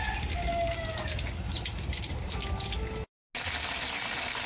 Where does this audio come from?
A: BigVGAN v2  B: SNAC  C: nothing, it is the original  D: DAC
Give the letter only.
C